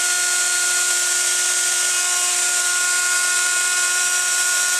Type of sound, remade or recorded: recorded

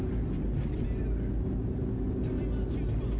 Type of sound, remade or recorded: recorded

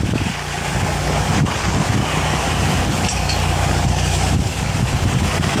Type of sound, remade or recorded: remade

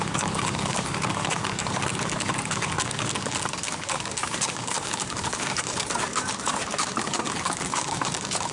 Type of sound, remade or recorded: remade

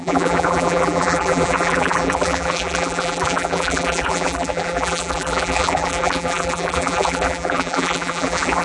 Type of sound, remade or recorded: remade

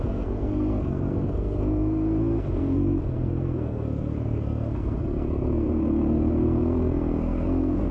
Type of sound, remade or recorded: remade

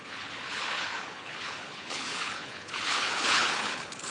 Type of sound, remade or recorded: remade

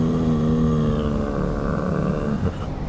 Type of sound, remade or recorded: recorded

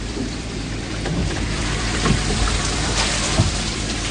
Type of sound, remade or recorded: remade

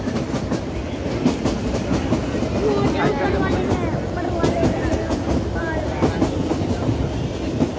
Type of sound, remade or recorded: recorded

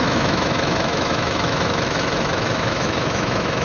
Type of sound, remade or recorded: remade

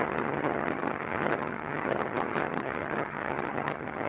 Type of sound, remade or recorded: remade